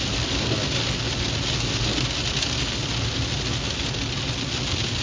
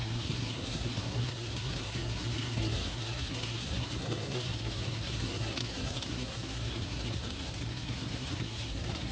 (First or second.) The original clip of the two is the first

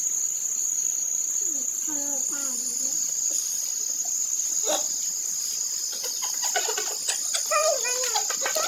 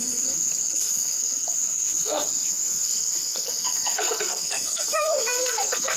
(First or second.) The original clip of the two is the first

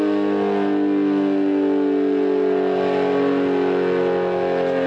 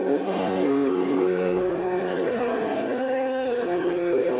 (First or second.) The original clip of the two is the first